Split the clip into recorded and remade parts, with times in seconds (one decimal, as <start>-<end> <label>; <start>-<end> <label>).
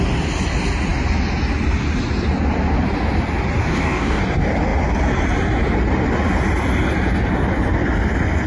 0.0-3.6 recorded; 3.6-4.2 remade; 4.2-8.5 recorded